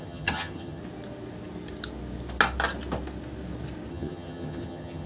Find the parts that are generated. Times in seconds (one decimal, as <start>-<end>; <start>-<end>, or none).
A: 0.0-0.8; 3.9-5.1